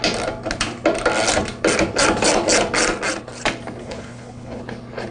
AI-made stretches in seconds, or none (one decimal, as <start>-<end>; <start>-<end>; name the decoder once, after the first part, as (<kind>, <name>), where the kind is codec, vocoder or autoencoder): 3.8-4.6 (codec, HILCodec)